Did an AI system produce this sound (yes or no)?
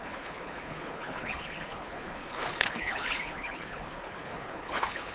yes